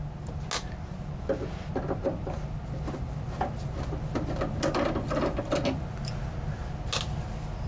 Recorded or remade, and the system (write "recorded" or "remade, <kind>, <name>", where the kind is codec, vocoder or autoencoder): recorded